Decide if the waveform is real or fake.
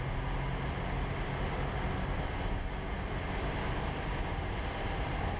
real